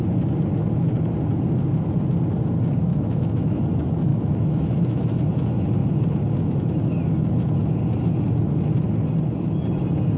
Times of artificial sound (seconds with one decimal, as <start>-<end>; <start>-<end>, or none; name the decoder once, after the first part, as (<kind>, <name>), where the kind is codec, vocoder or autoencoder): 2.9-3.6 (autoencoder, DAC-VAE); 4.1-5.2